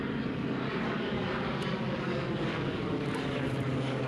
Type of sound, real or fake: fake